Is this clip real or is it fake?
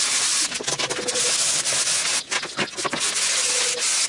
real